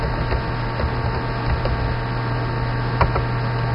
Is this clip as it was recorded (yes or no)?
yes